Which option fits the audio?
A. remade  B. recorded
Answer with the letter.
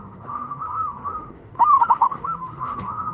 A